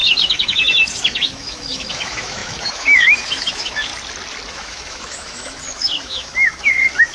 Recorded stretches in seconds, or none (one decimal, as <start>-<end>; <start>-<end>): 3.9-4.5